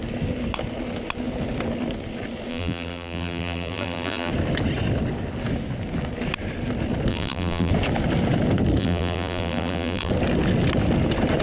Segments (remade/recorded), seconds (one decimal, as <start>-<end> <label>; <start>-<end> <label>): 0.0-2.5 recorded; 2.5-4.3 remade; 4.3-7.1 recorded; 7.1-7.7 remade; 7.7-8.8 recorded; 8.8-10.1 remade; 10.1-11.4 recorded